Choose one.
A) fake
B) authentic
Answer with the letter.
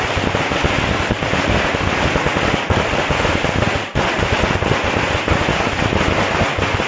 B